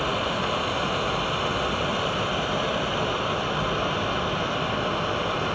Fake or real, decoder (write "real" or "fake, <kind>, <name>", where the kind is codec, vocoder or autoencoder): real